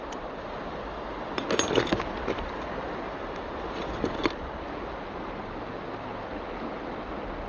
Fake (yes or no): no